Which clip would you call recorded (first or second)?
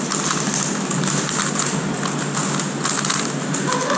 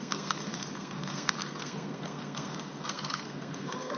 first